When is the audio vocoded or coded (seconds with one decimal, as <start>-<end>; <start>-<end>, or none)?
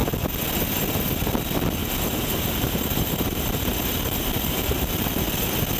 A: 1.8-5.2